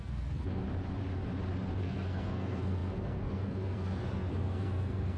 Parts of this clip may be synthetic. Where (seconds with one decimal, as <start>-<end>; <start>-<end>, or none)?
0.0-0.6; 1.8-5.2